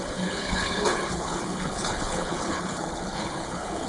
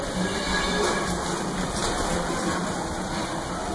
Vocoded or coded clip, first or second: first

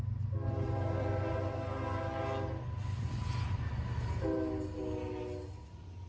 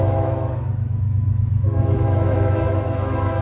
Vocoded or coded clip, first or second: second